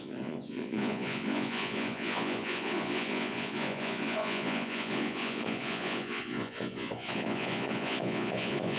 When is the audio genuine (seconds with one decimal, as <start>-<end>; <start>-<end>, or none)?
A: none